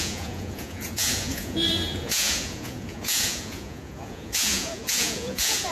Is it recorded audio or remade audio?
remade